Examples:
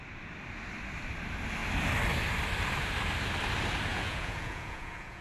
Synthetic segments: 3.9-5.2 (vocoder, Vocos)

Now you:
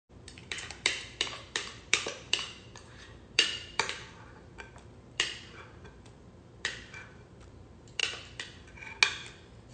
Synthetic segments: 0.0-8.0 (vocoder, BigVGAN v2)

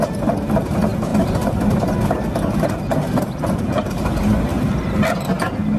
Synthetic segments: none